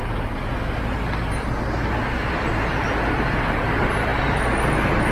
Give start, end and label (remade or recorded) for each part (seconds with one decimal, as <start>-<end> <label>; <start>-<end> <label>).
0.0-5.1 recorded